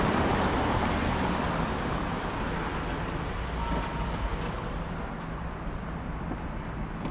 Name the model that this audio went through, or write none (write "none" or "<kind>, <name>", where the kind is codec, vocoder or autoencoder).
none